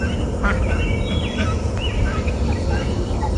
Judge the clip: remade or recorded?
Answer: recorded